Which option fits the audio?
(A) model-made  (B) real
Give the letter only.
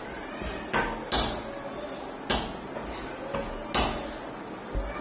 B